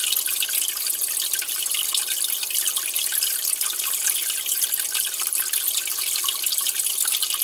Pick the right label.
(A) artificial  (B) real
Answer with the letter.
B